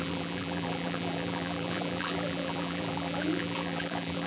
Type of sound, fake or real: fake